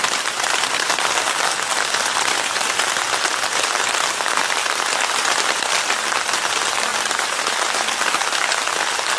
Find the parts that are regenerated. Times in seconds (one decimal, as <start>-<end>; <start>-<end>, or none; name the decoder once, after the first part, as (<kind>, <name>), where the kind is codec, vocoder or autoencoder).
6.9-7.4 (vocoder, BigVGAN v2)